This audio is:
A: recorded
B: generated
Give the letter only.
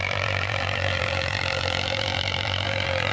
B